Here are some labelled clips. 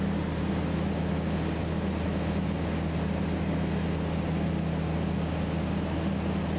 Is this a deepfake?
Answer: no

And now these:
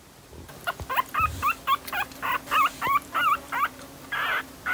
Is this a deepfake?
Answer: no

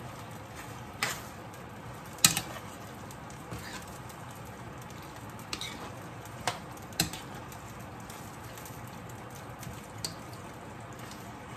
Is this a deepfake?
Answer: no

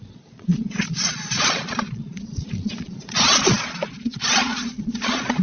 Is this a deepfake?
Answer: yes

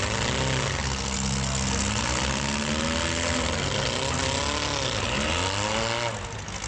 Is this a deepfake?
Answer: no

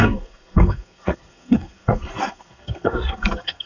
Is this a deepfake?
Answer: yes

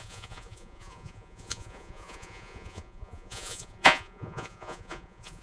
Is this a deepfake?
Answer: yes